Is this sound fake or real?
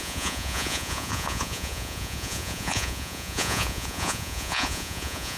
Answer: fake